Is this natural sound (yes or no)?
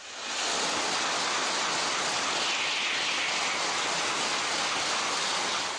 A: yes